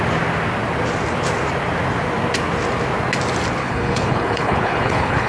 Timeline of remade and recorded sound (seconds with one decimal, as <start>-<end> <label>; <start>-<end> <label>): 0.0-3.6 recorded; 3.6-5.3 remade